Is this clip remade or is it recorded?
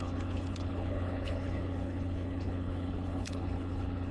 remade